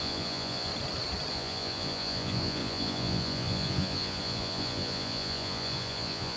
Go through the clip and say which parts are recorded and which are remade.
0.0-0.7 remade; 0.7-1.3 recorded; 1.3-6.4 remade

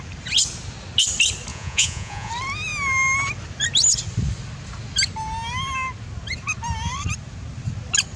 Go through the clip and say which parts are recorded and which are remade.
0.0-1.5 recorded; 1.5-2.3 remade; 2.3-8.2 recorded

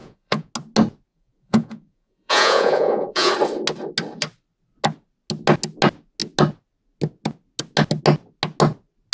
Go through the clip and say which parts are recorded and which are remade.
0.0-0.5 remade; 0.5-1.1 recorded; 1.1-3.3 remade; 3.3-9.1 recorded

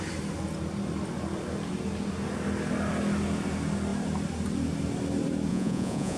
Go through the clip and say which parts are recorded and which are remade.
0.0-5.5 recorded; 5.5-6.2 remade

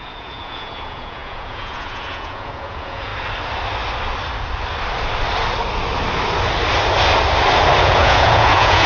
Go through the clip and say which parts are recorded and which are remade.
0.0-3.1 remade; 3.1-7.8 recorded; 7.8-8.9 remade